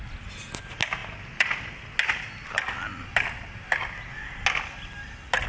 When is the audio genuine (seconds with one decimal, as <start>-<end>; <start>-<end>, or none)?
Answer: 0.0-5.5